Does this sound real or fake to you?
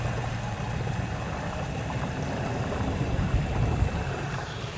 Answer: fake